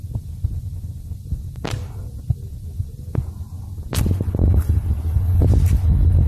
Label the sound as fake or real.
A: real